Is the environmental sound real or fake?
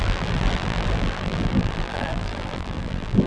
fake